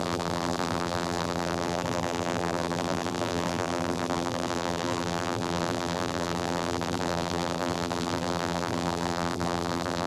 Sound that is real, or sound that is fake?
fake